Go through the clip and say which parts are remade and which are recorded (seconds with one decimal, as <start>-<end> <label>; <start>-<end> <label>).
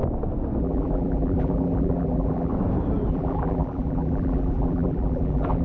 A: 0.0-0.6 recorded; 0.6-2.5 remade; 2.5-3.1 recorded; 3.1-5.6 remade